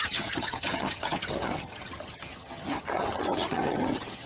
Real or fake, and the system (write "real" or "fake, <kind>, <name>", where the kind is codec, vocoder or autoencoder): fake, vocoder, HiFi-GAN